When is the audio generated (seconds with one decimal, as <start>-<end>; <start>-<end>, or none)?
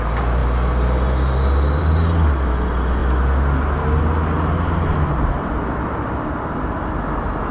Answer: none